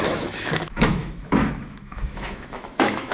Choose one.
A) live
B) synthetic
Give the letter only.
B